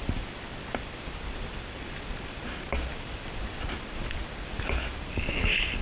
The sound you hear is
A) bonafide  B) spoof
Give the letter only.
A